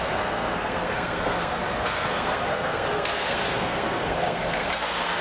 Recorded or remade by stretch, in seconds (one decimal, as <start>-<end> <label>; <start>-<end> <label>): 0.0-5.2 remade